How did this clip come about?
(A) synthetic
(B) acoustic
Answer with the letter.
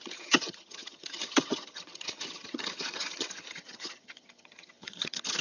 A